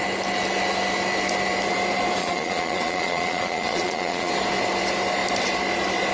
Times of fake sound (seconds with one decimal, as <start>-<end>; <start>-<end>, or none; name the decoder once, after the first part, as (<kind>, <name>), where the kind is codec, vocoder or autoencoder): 2.2-4.3 (vocoder, Vocos)